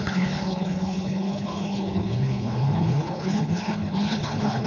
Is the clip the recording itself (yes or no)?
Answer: no